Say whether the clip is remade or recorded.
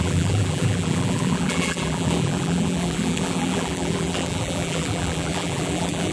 remade